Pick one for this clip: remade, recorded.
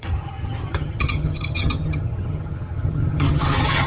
remade